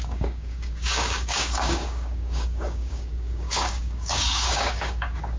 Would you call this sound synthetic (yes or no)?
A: yes